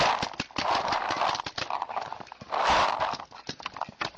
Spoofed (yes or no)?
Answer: no